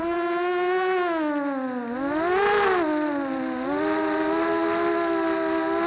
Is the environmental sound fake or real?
real